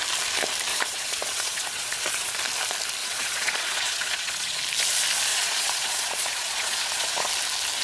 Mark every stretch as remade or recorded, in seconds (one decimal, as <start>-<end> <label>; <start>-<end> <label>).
0.0-0.7 recorded; 0.7-2.4 remade; 2.4-3.0 recorded; 3.0-4.6 remade; 4.6-5.3 recorded; 5.3-7.3 remade; 7.3-7.8 recorded